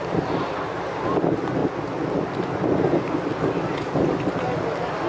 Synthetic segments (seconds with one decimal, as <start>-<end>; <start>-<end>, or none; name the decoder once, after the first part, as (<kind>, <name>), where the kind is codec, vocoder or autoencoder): none